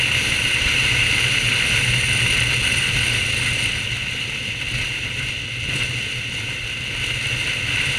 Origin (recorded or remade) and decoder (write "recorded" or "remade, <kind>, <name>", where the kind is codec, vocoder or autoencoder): recorded